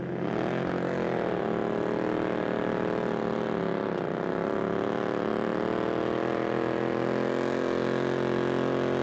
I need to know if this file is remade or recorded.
recorded